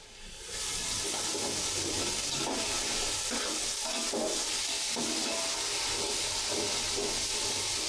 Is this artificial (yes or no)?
no